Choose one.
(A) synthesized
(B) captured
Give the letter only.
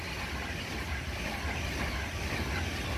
B